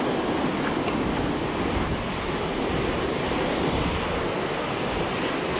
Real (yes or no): yes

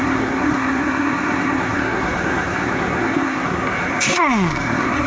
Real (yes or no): no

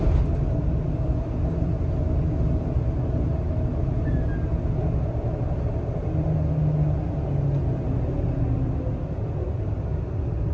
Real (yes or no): yes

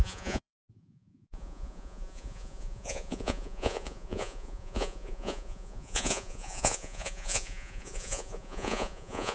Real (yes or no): no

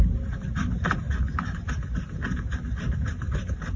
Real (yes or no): yes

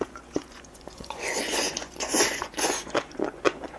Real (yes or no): no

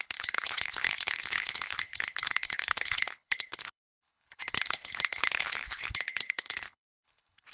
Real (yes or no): no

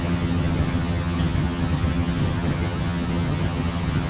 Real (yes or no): no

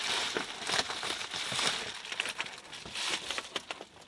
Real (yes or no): yes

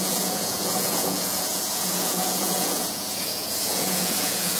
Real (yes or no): no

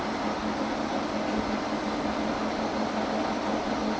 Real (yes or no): yes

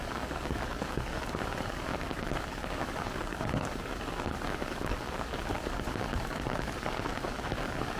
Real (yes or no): no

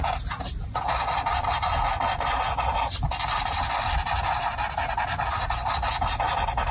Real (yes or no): yes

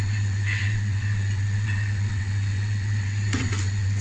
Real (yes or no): no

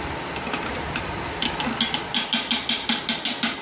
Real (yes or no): yes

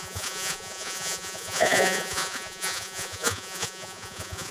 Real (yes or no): no